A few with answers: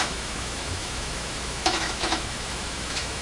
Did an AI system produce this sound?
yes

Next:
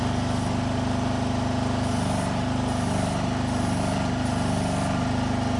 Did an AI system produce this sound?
no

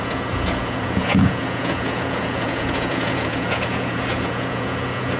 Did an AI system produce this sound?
yes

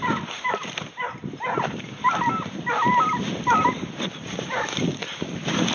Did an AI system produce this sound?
yes